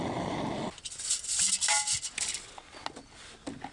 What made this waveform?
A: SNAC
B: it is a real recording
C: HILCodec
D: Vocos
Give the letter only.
B